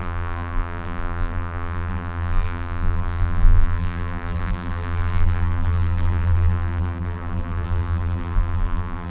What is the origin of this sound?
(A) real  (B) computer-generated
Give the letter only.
B